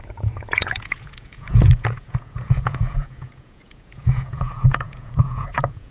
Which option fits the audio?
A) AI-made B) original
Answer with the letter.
A